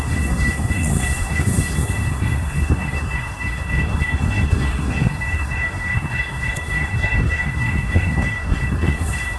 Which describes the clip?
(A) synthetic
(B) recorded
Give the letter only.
A